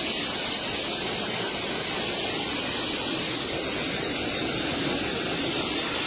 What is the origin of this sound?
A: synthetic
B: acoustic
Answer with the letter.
B